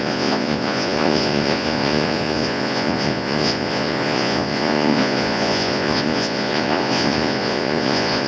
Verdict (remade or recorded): remade